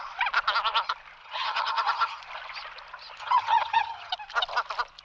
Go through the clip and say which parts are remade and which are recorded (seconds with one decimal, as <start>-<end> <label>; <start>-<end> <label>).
0.0-1.2 recorded; 1.2-2.2 remade; 2.2-3.2 recorded; 3.2-4.1 remade; 4.1-5.0 recorded

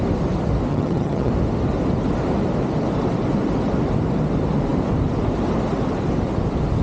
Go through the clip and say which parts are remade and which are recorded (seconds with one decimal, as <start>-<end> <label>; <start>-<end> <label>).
0.0-0.7 recorded; 0.7-1.3 remade; 1.3-6.8 recorded

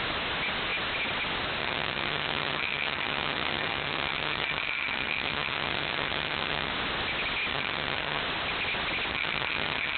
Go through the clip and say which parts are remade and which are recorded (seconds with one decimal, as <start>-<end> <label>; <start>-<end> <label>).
0.0-1.6 recorded; 1.6-6.7 remade; 6.7-7.5 recorded; 7.5-8.2 remade; 8.2-9.1 recorded; 9.1-10.0 remade

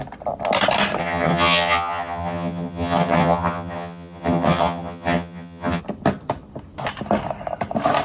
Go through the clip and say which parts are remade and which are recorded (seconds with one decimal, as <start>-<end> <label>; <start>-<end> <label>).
0.0-1.0 recorded; 1.0-5.8 remade; 5.8-8.0 recorded